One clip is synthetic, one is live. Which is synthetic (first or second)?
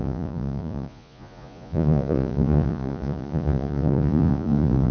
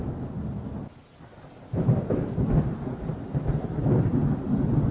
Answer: first